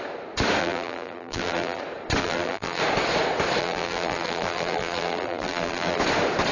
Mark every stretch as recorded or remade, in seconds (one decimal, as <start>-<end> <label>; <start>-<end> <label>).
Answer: 0.0-0.6 recorded; 0.6-1.8 remade; 1.8-2.2 recorded; 2.2-2.8 remade; 2.8-3.6 recorded; 3.6-6.0 remade; 6.0-6.5 recorded